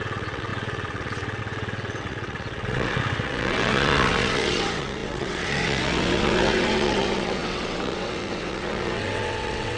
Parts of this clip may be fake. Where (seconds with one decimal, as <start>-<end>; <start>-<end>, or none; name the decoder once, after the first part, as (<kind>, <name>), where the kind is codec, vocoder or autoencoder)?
0.0-9.8 (vocoder, WaveNeXt)